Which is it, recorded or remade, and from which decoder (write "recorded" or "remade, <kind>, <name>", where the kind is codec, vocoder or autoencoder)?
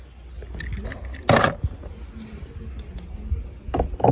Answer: recorded